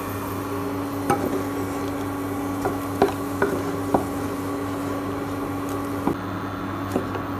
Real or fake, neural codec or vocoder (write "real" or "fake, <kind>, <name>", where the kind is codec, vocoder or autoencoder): real